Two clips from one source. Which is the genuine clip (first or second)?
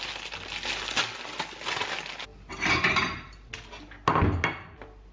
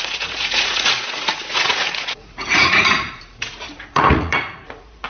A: first